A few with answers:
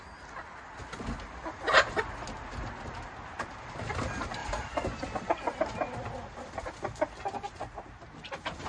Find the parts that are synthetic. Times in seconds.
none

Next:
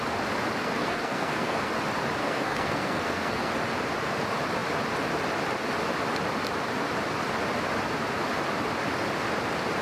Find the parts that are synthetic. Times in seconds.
0.6-1.7 (codec, SNAC); 2.2-3.5

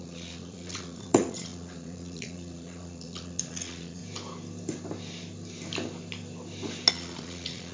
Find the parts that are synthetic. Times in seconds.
0.0-4.0 (vocoder, Vocos); 6.9-7.7

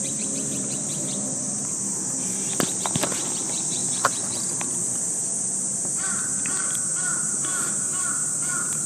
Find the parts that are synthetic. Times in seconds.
0.0-3.8 (vocoder, BigVGAN v2); 5.1-8.9

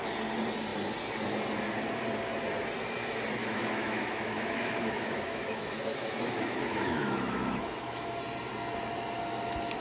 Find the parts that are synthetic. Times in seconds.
3.4-8.2 (autoencoder, DAC-VAE)

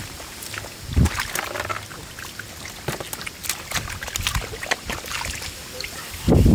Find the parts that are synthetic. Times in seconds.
none

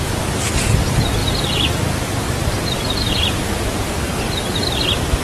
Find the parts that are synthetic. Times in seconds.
1.2-4.2 (vocoder, BigVGAN v2)